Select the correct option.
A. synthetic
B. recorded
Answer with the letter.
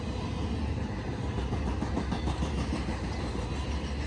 B